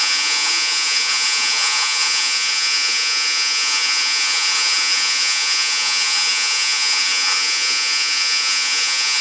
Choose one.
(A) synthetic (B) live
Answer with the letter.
A